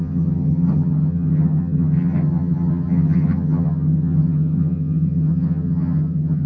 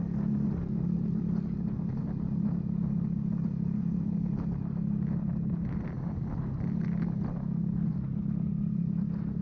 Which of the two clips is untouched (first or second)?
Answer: second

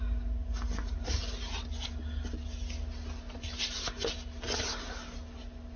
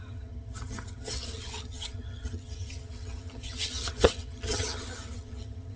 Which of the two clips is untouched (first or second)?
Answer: first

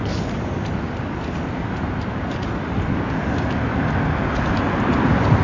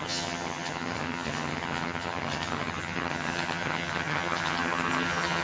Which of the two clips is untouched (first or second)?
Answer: first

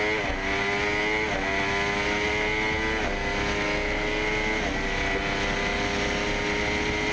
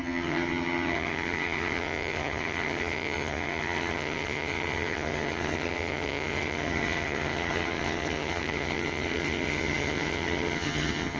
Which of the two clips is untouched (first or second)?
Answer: first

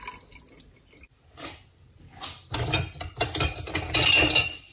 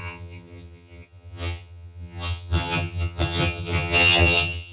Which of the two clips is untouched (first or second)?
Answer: first